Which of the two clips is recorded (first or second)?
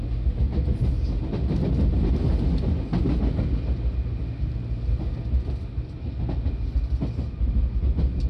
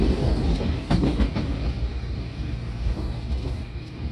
first